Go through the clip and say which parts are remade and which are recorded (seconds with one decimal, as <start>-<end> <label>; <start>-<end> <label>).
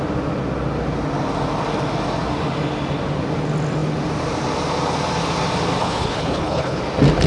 0.0-5.8 recorded; 5.8-6.8 remade; 6.8-7.3 recorded